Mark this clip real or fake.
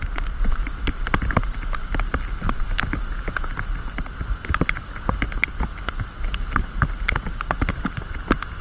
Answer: real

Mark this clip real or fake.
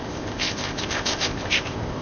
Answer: fake